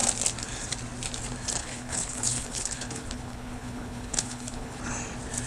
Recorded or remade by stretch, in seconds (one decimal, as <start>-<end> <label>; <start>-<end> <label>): 0.0-1.6 recorded; 1.6-4.8 remade; 4.8-5.5 recorded